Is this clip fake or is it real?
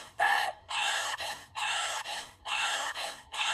fake